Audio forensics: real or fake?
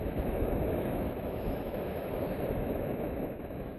fake